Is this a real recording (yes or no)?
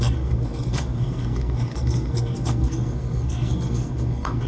no